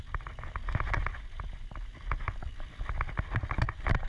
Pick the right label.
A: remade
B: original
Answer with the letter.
B